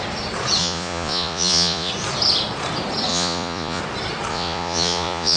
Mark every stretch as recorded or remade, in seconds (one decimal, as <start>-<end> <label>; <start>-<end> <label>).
0.0-0.6 recorded; 0.6-1.9 remade; 1.9-3.1 recorded; 3.1-3.8 remade; 3.8-4.3 recorded; 4.3-5.4 remade